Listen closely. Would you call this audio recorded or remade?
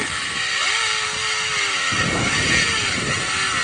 recorded